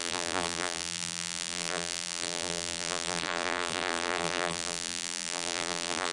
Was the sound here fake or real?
fake